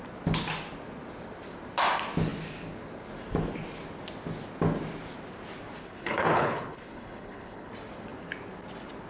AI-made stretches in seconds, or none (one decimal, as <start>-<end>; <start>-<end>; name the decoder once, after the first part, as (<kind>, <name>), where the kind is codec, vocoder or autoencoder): 5.8-7.7 (codec, HILCodec)